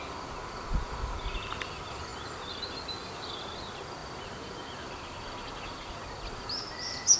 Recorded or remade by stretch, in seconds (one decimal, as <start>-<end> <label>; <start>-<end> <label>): 0.0-7.2 recorded